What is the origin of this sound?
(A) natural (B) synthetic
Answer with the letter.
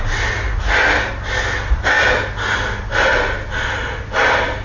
A